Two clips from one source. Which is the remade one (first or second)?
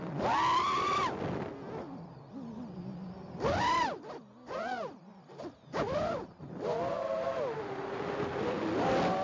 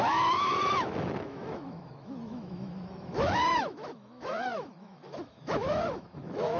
second